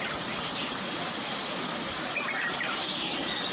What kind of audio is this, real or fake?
real